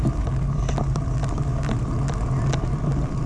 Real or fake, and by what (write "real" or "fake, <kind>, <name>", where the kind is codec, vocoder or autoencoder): real